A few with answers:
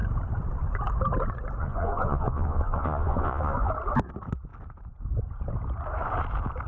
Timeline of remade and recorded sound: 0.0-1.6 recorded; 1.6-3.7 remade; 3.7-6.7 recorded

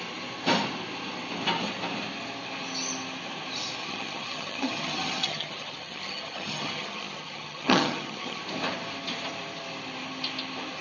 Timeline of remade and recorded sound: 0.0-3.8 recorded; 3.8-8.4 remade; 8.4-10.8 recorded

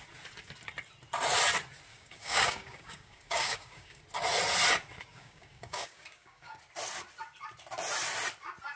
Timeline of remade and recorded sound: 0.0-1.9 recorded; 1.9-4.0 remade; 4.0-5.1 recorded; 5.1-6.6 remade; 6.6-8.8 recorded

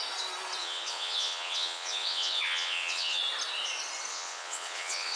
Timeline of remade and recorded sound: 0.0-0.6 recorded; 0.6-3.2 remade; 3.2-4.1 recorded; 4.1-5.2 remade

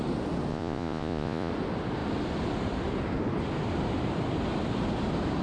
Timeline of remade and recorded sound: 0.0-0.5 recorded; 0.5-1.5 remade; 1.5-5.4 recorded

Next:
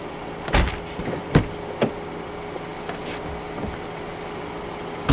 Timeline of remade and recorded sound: 0.0-5.1 recorded

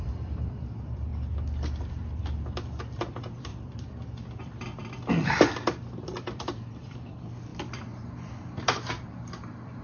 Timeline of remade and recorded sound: 0.0-1.1 remade; 1.1-1.9 recorded; 1.9-9.8 remade

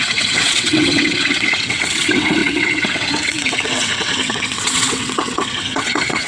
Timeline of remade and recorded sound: 0.0-6.3 remade